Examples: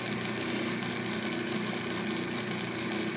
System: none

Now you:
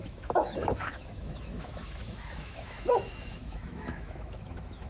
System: autoencoder, DAC-VAE